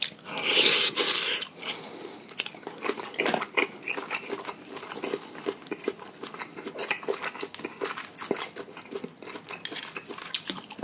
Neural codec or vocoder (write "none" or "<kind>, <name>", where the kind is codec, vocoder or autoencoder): none